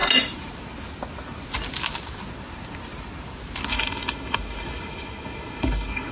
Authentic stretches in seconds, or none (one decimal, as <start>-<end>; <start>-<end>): 0.0-3.7